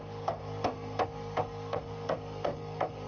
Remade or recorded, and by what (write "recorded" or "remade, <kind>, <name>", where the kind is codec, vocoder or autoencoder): remade, codec, SNAC